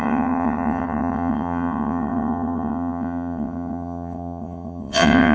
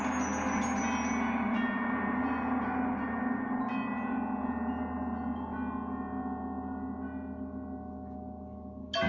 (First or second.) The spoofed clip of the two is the first